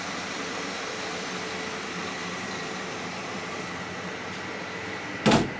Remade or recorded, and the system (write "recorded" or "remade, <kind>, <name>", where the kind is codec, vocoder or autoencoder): recorded